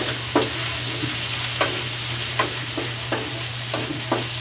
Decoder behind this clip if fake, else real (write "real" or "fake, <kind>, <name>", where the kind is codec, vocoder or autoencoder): real